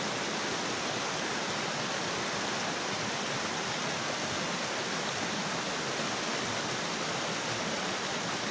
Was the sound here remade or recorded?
recorded